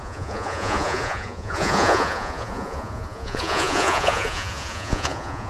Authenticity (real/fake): fake